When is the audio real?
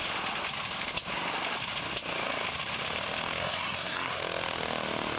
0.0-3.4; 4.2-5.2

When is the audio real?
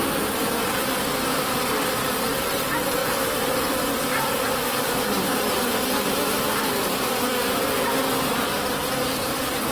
0.0-0.6; 1.6-3.0; 5.3-9.7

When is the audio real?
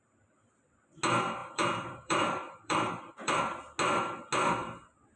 0.0-1.4; 3.4-4.6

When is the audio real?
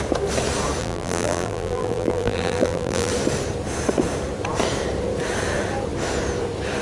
0.0-0.8; 3.1-6.8